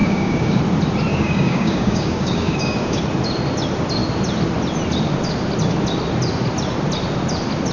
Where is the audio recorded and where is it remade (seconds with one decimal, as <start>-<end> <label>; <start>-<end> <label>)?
0.0-0.6 remade; 0.6-1.1 recorded; 1.1-3.0 remade; 3.0-7.7 recorded